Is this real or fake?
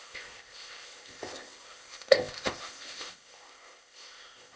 fake